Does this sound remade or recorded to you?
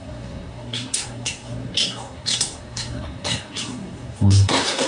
remade